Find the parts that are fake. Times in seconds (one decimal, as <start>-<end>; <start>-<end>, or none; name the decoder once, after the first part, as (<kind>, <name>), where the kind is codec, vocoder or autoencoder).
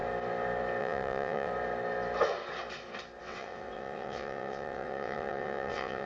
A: 0.8-1.5 (vocoder, WaveNeXt); 3.2-6.1